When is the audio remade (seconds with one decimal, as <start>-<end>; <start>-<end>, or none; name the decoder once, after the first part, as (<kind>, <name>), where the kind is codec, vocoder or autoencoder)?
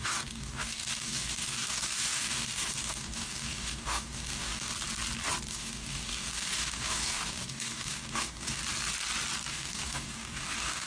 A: 0.0-4.7 (codec, DAC); 5.5-8.6; 9.5-10.9